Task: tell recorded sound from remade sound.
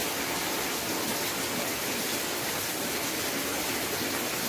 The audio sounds recorded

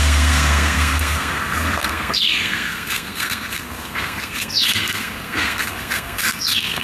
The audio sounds remade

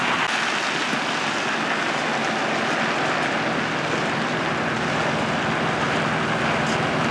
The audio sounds recorded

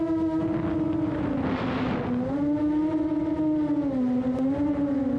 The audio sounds recorded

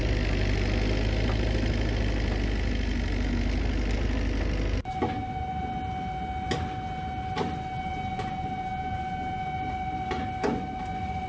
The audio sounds recorded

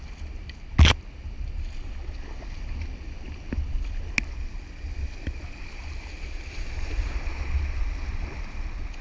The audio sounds recorded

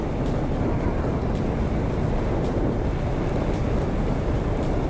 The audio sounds recorded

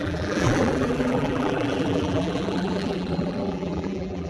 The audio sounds remade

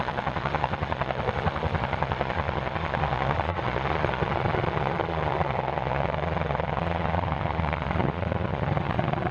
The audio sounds remade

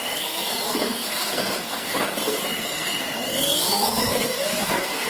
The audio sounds remade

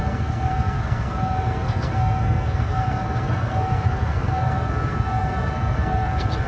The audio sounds remade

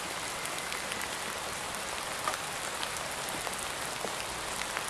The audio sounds recorded